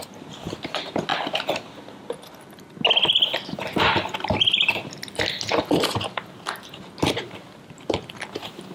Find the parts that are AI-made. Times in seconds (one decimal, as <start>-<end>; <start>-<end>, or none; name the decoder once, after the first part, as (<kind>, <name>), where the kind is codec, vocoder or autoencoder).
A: none